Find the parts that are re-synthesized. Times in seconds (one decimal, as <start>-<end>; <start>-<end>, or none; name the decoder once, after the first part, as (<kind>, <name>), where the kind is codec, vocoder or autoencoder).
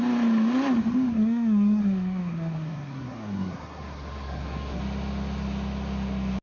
1.1-4.8 (codec, SNAC)